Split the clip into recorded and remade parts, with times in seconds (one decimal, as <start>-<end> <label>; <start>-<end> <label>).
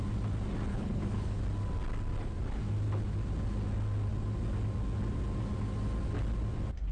0.0-0.7 recorded; 0.7-1.4 remade; 1.4-6.9 recorded